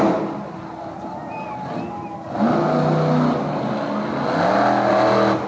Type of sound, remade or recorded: recorded